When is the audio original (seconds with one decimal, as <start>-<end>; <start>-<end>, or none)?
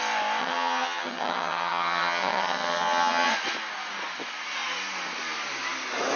0.0-0.4; 3.3-6.2